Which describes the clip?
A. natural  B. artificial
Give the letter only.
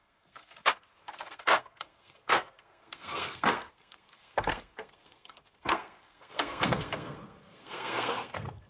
B